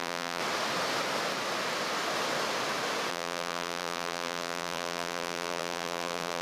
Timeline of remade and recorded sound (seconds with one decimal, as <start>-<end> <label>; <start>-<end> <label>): 0.0-0.4 remade; 0.4-3.1 recorded; 3.1-6.4 remade